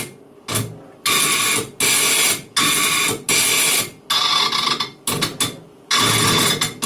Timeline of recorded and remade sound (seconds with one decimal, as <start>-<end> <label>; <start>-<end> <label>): 0.0-6.9 recorded